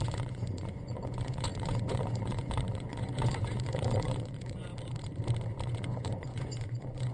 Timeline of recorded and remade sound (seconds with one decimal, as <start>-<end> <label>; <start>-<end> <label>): 0.0-4.7 remade; 4.7-5.6 recorded; 5.6-7.1 remade